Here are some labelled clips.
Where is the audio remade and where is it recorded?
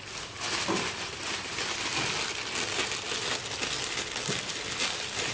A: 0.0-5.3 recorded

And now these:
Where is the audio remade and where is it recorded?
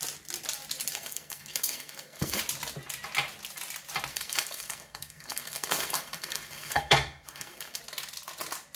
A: 0.0-0.9 recorded; 0.9-2.4 remade; 2.4-4.1 recorded; 4.1-7.8 remade; 7.8-8.8 recorded